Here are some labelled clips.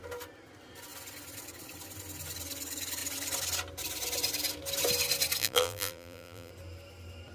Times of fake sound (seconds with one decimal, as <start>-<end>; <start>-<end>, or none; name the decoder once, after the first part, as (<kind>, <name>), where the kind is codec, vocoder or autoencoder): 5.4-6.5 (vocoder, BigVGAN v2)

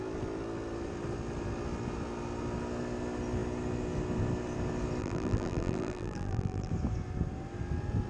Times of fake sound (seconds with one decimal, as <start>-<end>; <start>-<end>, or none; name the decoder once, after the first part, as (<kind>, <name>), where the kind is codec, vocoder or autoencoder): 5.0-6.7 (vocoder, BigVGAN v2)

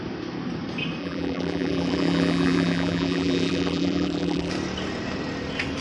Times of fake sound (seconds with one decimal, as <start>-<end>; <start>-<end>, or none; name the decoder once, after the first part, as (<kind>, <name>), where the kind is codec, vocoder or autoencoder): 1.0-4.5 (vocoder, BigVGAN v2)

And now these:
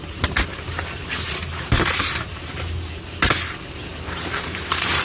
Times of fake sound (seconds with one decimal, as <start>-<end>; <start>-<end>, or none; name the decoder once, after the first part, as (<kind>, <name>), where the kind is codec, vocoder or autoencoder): 1.4-3.1 (vocoder, BigVGAN v2); 3.9-5.0

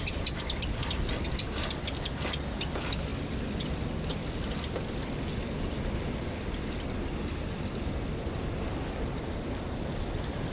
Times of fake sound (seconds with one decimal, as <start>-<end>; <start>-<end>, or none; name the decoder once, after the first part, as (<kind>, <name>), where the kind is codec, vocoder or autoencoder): none